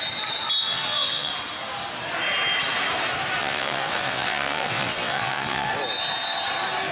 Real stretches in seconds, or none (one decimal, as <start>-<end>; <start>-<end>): 0.0-0.6; 1.3-3.4; 5.7-6.9